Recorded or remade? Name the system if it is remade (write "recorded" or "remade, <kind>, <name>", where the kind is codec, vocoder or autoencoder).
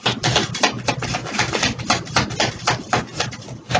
recorded